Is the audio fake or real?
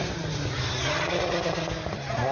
real